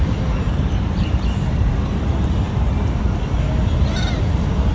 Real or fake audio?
fake